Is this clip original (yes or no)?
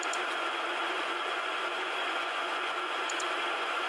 no